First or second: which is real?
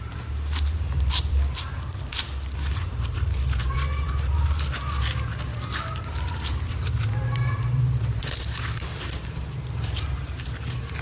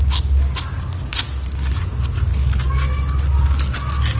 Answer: second